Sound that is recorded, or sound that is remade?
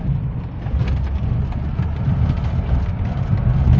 recorded